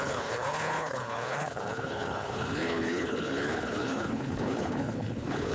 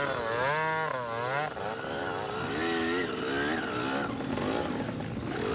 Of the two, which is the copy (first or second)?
first